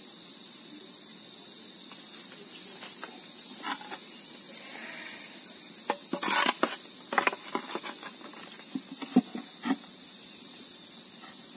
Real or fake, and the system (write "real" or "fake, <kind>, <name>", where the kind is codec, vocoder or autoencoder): real